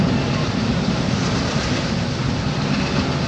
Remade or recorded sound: recorded